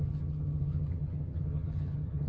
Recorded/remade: remade